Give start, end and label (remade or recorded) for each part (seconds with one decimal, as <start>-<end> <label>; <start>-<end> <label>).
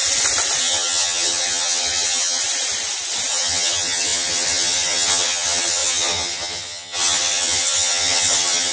0.0-0.6 recorded; 0.6-2.4 remade; 2.4-3.3 recorded; 3.3-8.7 remade